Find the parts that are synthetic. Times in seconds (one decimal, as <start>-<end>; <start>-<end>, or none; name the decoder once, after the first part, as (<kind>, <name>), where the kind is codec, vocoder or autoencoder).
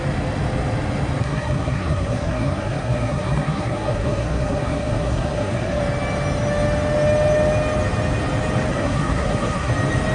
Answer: 1.2-5.8 (codec, SNAC); 8.7-9.7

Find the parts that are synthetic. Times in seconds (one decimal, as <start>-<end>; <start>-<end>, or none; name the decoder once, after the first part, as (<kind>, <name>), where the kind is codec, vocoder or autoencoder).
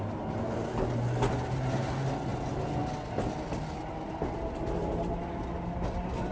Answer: none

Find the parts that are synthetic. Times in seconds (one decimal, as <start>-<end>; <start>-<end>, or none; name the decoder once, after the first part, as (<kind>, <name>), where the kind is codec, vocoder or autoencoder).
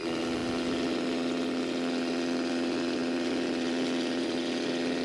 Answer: none